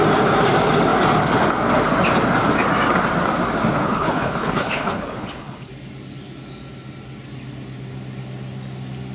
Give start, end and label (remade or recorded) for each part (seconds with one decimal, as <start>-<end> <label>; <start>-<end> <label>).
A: 0.0-3.8 recorded; 3.8-5.7 remade; 5.7-9.1 recorded